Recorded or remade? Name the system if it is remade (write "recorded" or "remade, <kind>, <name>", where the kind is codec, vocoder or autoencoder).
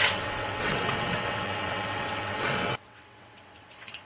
remade, vocoder, WaveNeXt